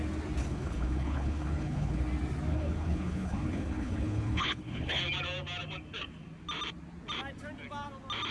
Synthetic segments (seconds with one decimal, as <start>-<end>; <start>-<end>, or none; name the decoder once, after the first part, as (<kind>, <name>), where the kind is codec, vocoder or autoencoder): 0.4-2.0 (codec, HILCodec); 2.5-5.0